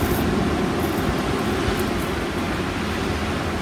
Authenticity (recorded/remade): recorded